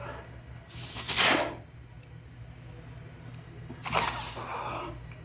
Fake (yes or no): no